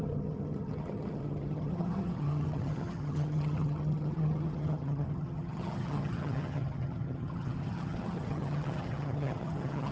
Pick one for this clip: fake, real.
fake